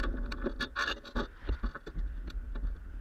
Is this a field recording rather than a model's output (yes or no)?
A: yes